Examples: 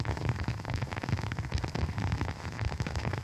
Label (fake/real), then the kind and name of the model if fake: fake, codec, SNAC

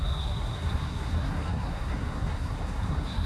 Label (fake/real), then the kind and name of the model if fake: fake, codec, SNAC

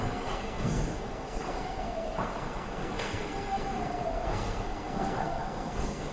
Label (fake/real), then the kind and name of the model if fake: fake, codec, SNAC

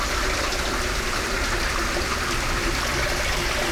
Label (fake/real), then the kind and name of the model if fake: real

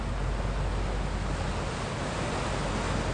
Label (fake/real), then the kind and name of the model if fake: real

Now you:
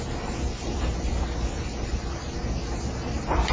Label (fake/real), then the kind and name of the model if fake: real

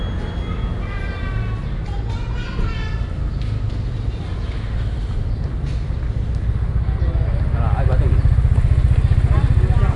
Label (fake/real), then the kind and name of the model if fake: real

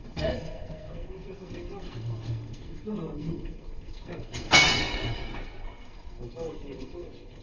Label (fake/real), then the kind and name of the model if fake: fake, codec, SNAC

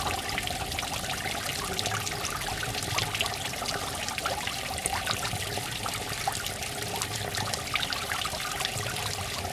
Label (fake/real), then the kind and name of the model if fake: real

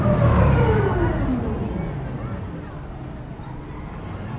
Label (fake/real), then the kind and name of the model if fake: real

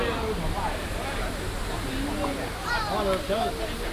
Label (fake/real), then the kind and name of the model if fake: real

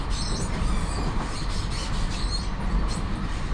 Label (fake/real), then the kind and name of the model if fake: real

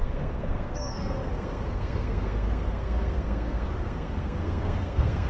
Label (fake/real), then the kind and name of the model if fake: fake, codec, SNAC